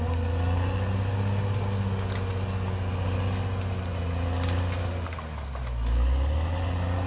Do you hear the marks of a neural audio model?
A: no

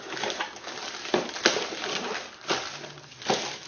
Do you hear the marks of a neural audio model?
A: no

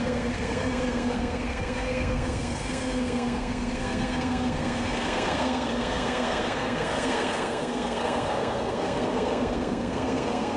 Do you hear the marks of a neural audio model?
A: yes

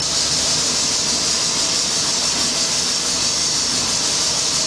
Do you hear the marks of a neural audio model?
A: no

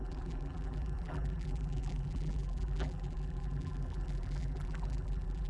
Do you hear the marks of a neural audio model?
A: yes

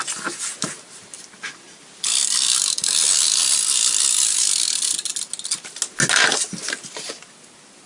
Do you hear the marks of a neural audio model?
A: no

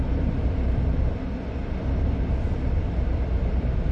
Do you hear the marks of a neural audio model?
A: no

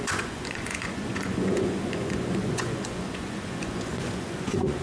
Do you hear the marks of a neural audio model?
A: yes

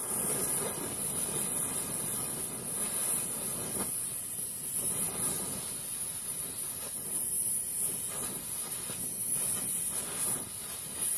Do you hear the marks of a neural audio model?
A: no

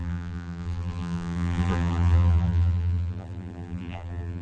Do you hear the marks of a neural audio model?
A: yes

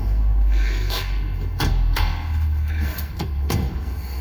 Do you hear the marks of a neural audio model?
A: yes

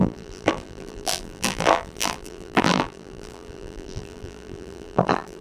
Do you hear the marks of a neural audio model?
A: yes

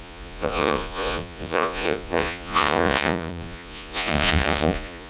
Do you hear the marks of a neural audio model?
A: yes